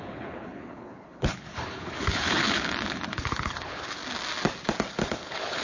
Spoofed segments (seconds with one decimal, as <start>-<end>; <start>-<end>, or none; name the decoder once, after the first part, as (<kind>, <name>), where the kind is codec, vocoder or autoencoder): 0.0-4.0 (codec, HILCodec); 4.9-5.6